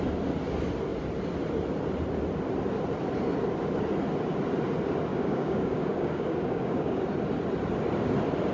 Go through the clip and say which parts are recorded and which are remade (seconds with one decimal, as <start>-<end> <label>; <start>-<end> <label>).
0.0-5.1 recorded; 5.1-7.0 remade; 7.0-8.5 recorded